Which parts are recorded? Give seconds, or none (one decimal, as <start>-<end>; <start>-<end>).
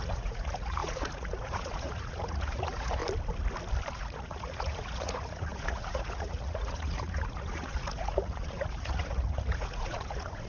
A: 3.0-3.9